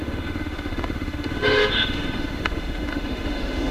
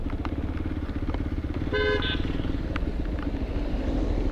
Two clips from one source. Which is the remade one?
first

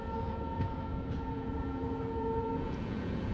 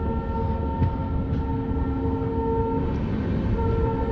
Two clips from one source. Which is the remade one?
first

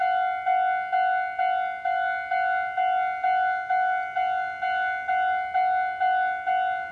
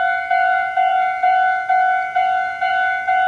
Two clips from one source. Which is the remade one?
second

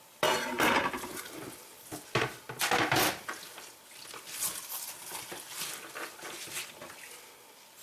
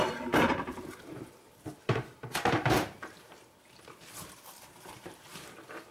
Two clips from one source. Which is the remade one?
second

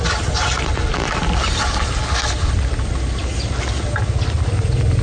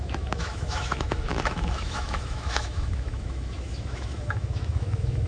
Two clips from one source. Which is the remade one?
second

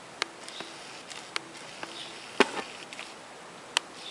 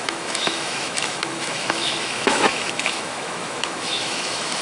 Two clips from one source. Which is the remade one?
second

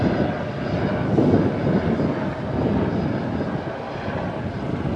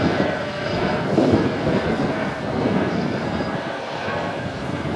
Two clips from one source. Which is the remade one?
second